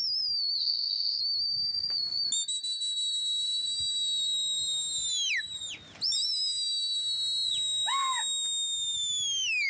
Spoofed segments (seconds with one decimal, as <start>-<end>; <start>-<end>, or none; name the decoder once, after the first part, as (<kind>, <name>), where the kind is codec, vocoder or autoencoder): 0.6-1.2 (codec, ZipCodec)